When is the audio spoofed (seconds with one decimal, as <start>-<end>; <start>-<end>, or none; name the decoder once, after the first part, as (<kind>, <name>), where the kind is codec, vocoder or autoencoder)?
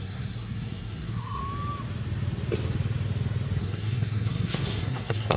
0.0-1.4 (codec, SNAC); 3.6-5.4